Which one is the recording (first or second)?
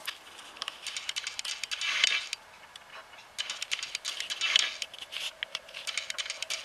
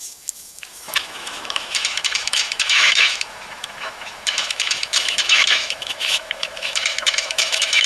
first